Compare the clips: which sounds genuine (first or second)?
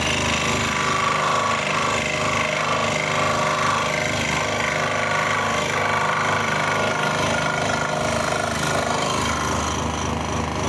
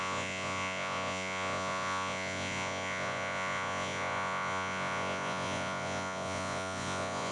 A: first